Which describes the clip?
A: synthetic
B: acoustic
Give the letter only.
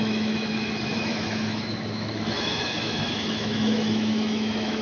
A